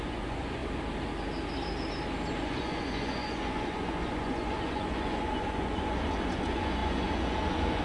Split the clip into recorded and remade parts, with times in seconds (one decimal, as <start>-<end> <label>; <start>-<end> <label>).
0.0-0.6 remade; 0.6-2.3 recorded; 2.3-7.8 remade

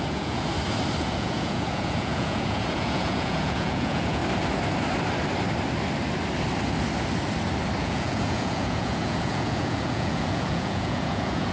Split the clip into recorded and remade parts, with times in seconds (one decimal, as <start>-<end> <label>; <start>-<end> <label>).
0.0-0.5 remade; 0.5-1.0 recorded; 1.0-4.2 remade; 4.2-7.8 recorded; 7.8-11.5 remade